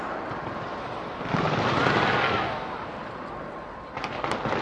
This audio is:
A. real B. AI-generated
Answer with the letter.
A